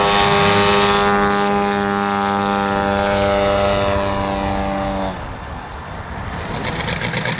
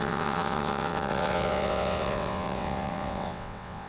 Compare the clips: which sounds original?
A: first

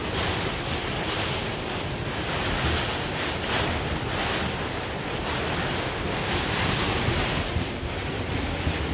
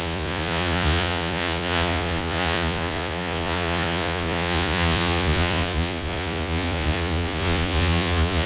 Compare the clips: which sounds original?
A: first